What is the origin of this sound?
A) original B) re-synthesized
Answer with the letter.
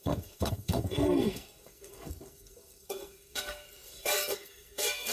B